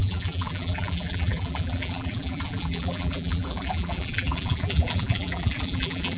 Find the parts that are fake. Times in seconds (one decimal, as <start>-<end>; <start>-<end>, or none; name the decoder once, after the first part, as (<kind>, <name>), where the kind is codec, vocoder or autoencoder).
0.0-6.2 (vocoder, BigVGAN v2)